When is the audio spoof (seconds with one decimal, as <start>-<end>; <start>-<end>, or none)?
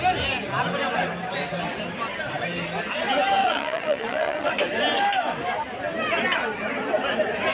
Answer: 3.4-4.5